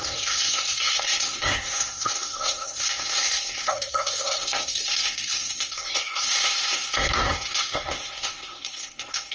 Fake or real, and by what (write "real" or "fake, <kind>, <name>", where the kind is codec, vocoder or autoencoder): fake, codec, SNAC